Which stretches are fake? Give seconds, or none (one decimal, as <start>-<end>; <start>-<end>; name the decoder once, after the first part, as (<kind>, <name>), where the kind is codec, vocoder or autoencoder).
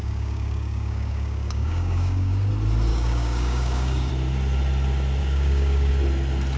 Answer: 0.0-2.5 (codec, DAC); 2.9-4.1; 5.2-5.9